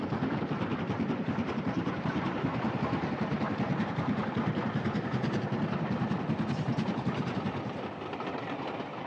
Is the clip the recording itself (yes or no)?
no